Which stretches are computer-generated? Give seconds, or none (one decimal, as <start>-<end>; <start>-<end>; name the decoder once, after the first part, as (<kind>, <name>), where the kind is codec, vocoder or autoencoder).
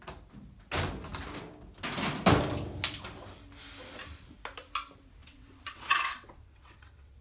5.2-7.2 (vocoder, WaveNeXt)